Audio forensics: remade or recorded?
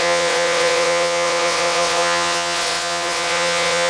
remade